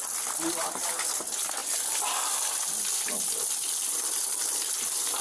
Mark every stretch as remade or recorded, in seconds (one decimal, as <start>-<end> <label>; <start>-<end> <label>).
0.0-5.2 recorded